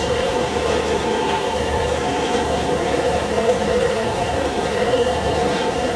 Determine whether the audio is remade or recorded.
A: remade